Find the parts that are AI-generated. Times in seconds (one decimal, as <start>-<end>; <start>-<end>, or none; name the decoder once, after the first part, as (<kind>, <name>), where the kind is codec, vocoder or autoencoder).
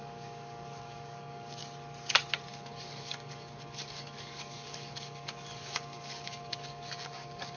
0.0-1.6 (codec, DAC); 2.5-7.6